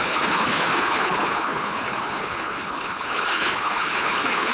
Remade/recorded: remade